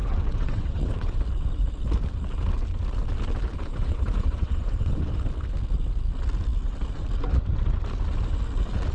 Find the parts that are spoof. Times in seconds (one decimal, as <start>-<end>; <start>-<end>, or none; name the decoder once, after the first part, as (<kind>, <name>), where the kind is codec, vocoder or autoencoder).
0.0-1.2 (vocoder, WaveNeXt); 3.7-5.1

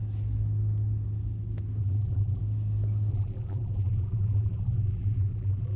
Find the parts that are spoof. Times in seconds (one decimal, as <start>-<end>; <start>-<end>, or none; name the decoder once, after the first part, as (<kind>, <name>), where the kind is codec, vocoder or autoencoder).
1.8-2.4 (vocoder, BigVGAN v2); 3.1-5.8

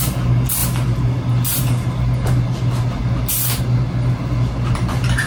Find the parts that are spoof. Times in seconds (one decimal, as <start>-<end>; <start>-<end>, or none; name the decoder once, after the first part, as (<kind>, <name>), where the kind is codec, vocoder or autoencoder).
none

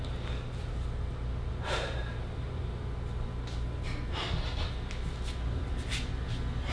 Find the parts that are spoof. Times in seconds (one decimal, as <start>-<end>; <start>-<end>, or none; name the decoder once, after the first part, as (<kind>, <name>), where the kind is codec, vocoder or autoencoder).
1.5-2.2 (vocoder, BigVGAN v2)

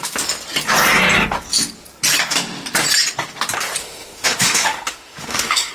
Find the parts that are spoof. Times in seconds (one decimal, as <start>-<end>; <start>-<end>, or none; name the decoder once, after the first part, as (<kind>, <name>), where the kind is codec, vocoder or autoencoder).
3.8-5.7 (autoencoder, DAC-VAE)

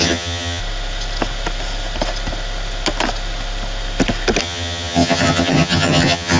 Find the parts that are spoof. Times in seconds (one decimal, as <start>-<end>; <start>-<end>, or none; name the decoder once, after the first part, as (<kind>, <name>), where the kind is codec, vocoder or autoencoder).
0.0-0.6 (vocoder, HiFi-GAN); 4.4-6.4